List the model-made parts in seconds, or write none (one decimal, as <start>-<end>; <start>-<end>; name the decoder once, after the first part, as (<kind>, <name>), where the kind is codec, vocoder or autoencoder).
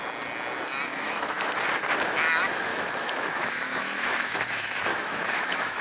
0.9-1.5 (autoencoder, DAC-VAE); 2.7-5.8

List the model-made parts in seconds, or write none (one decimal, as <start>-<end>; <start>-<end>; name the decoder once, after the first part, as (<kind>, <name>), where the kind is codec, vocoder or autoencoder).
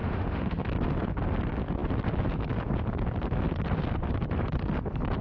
0.0-0.7 (autoencoder, DAC-VAE)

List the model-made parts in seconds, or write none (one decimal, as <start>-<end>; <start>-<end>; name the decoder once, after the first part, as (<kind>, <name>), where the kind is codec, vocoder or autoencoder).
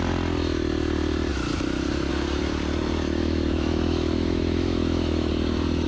3.2-5.3 (autoencoder, DAC-VAE)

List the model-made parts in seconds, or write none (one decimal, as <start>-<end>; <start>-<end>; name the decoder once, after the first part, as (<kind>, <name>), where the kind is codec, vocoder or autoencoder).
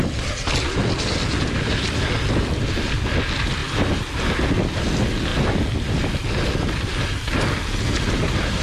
none